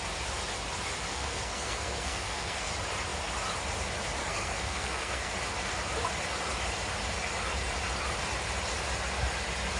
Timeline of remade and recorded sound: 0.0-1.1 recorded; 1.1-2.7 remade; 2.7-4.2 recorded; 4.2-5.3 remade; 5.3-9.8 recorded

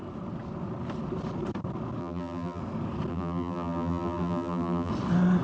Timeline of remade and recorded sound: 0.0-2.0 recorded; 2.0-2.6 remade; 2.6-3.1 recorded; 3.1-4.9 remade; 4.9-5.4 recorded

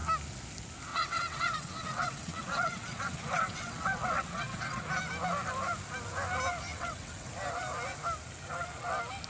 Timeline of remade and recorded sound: 0.0-0.9 recorded; 0.9-4.8 remade; 4.8-6.7 recorded; 6.7-7.3 remade; 7.3-9.3 recorded

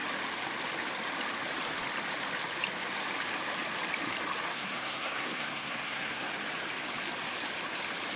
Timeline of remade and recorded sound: 0.0-4.5 recorded; 4.5-6.3 remade; 6.3-8.2 recorded

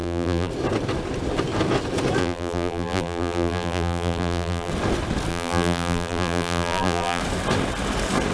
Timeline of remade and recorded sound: 0.0-0.5 remade; 0.5-2.2 recorded; 2.2-4.7 remade; 4.7-5.3 recorded; 5.3-7.2 remade; 7.2-8.3 recorded

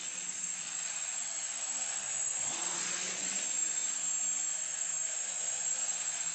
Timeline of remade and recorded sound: 0.0-0.9 remade; 0.9-2.3 recorded; 2.3-3.3 remade; 3.3-6.3 recorded

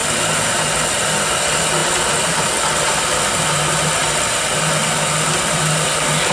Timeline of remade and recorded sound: 0.0-6.3 recorded